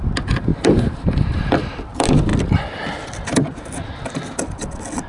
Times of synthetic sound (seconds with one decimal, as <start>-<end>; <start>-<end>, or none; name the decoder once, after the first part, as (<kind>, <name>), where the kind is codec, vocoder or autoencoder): 0.5-1.9 (vocoder, BigVGAN v2)